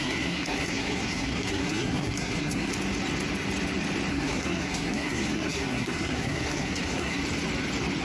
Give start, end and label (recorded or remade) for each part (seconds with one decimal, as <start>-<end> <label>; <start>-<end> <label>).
0.0-2.7 remade; 2.7-4.1 recorded; 4.1-7.2 remade; 7.2-8.0 recorded